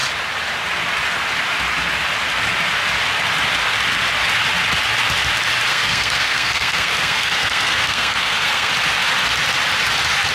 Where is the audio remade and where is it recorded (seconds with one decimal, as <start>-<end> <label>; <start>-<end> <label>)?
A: 0.0-5.7 recorded; 5.7-8.7 remade; 8.7-10.3 recorded